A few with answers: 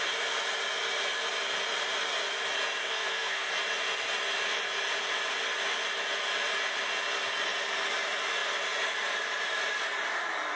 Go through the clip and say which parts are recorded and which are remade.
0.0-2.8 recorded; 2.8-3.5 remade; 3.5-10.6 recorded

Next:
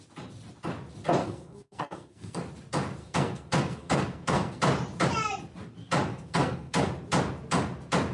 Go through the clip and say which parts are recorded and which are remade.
0.0-1.2 recorded; 1.2-2.5 remade; 2.5-3.0 recorded; 3.0-4.6 remade; 4.6-6.1 recorded; 6.1-6.9 remade; 6.9-8.1 recorded

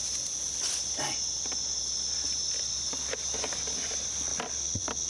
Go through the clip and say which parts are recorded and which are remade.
0.0-5.1 recorded

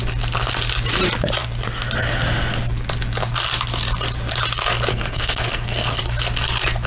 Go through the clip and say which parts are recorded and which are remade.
0.0-4.9 recorded; 4.9-6.0 remade; 6.0-6.9 recorded

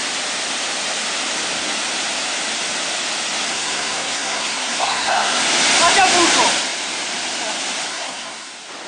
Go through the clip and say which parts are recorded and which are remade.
0.0-3.5 recorded; 3.5-5.4 remade; 5.4-7.9 recorded; 7.9-8.5 remade; 8.5-8.9 recorded

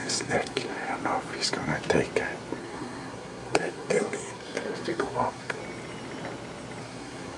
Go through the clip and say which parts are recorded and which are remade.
0.0-0.9 remade; 0.9-2.6 recorded; 2.6-5.6 remade; 5.6-6.8 recorded; 6.8-7.4 remade